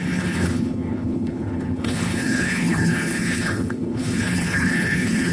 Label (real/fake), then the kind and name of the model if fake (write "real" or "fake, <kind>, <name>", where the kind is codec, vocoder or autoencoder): fake, codec, HILCodec